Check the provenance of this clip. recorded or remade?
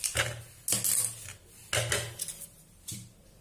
recorded